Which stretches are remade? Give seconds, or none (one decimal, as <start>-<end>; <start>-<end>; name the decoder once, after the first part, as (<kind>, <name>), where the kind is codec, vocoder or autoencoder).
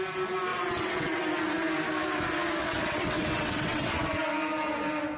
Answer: 0.5-1.2 (vocoder, WaveNeXt); 2.6-3.9